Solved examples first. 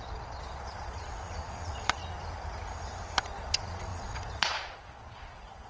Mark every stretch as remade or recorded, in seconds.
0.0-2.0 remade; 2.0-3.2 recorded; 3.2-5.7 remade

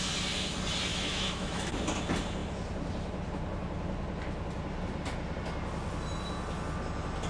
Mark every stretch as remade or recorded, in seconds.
0.0-0.9 recorded; 0.9-1.7 remade; 1.7-7.3 recorded

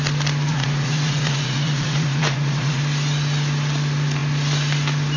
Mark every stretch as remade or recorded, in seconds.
0.0-0.5 recorded; 0.5-2.8 remade; 2.8-5.2 recorded

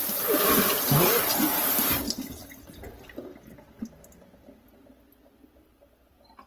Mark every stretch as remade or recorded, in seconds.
0.0-6.5 recorded

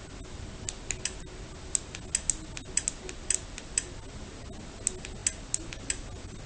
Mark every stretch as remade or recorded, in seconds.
0.0-6.5 recorded

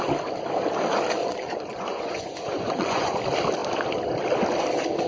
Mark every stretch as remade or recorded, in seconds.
0.0-1.2 recorded; 1.2-3.2 remade; 3.2-5.1 recorded

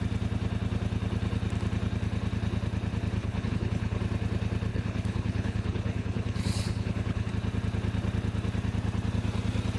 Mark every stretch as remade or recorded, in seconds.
0.0-3.2 recorded; 3.2-4.0 remade; 4.0-4.7 recorded; 4.7-7.3 remade; 7.3-9.8 recorded